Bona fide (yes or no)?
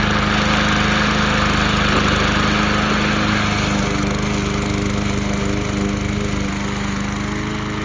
yes